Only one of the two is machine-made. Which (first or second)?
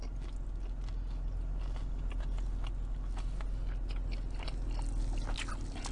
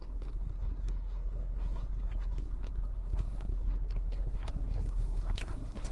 second